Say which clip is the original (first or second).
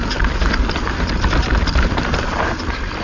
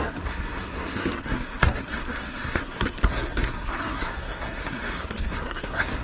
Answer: first